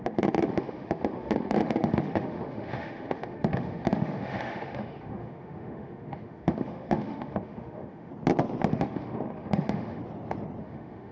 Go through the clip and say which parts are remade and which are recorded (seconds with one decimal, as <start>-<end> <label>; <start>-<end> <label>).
0.0-8.1 remade; 8.1-8.7 recorded; 8.7-10.0 remade; 10.0-10.6 recorded; 10.6-11.1 remade